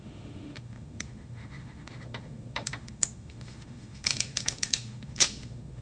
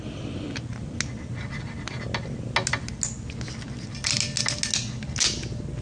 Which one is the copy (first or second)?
first